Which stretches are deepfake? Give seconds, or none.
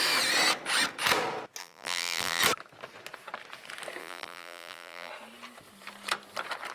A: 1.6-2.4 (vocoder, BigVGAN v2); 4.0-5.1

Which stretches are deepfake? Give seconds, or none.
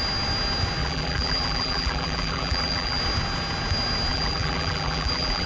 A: 0.8-3.0 (vocoder, BigVGAN v2); 4.1-5.5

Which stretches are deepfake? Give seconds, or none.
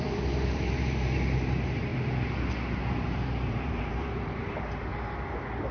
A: 0.0-1.9 (vocoder, BigVGAN v2); 3.1-4.9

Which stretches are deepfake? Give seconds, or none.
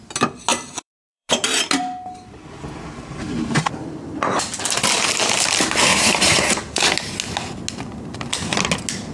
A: 0.5-1.8 (vocoder, BigVGAN v2); 5.9-6.6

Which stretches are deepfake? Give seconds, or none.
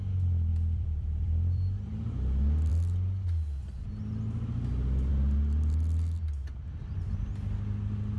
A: 0.5-2.0 (vocoder, BigVGAN v2)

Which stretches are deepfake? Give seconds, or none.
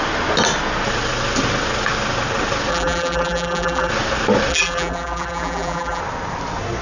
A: 2.7-3.9 (vocoder, BigVGAN v2); 4.5-6.0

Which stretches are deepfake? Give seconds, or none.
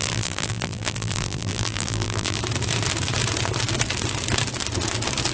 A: 0.0-2.4 (vocoder, BigVGAN v2)